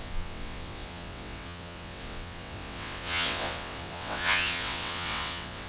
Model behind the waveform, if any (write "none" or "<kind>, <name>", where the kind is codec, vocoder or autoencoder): vocoder, WaveNeXt